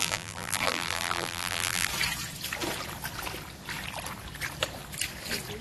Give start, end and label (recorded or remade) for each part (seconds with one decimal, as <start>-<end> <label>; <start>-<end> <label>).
0.0-1.9 remade; 1.9-5.6 recorded